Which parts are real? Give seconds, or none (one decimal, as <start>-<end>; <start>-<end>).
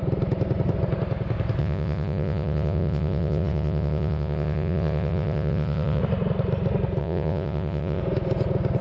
0.0-1.6; 6.0-7.0; 8.0-8.8